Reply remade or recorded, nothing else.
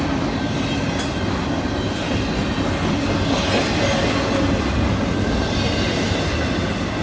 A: recorded